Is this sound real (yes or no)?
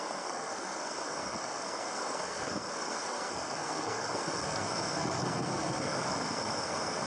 no